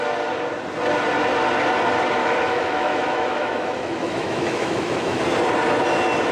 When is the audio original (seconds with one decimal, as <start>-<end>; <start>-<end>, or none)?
0.0-2.2; 5.2-6.3